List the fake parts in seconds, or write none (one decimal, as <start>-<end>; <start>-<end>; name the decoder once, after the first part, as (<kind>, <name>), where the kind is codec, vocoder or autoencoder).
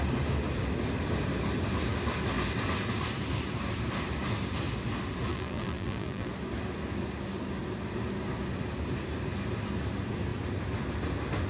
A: 5.3-6.3 (vocoder, BigVGAN v2)